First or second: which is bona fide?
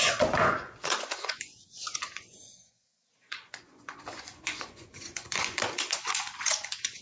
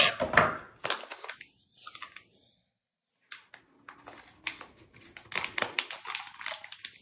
second